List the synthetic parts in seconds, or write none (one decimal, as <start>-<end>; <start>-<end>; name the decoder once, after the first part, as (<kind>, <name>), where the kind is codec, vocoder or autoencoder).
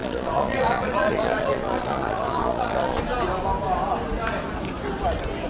0.0-3.0 (vocoder, Vocos)